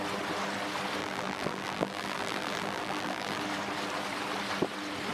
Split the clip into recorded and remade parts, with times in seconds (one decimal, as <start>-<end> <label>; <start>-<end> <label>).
0.0-1.0 recorded; 1.0-3.4 remade; 3.4-5.1 recorded